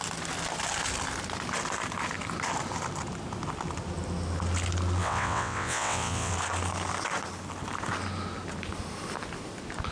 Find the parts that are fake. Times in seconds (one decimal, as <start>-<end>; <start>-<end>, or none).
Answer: 5.0-6.3